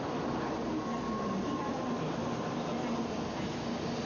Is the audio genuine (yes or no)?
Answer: yes